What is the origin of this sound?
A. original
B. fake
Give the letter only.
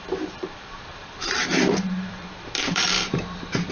B